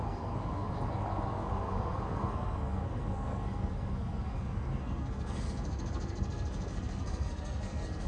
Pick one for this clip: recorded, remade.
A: remade